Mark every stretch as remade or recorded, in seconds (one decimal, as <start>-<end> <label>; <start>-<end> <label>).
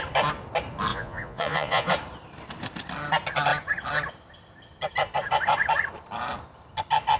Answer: 0.0-0.9 recorded; 0.9-1.9 remade; 1.9-7.2 recorded